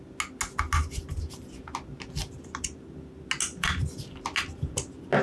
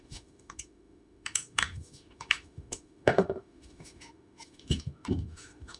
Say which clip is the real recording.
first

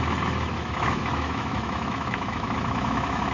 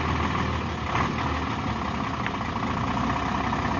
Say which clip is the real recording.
second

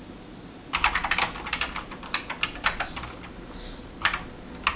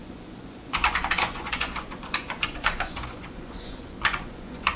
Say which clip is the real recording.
first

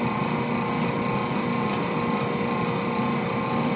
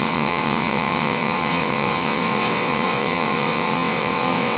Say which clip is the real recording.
first